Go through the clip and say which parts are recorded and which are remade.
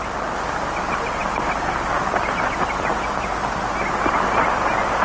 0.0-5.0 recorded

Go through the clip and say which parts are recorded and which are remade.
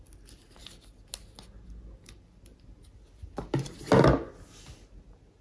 0.0-5.4 recorded